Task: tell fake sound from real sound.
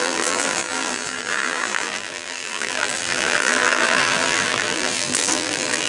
fake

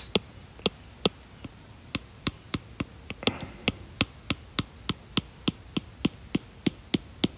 real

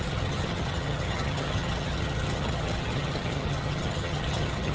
fake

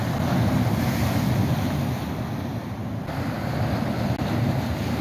real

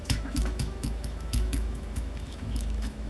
fake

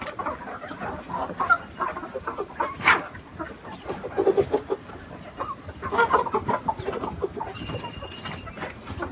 real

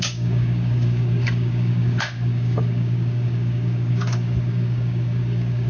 fake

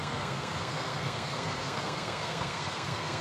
fake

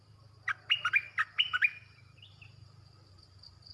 real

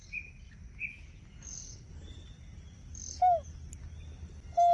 real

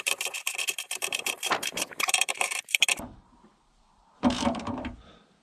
fake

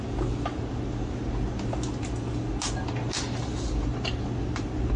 real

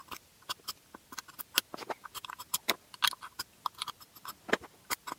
real